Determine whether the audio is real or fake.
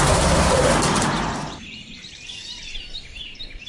fake